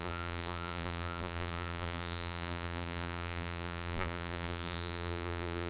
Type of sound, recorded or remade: remade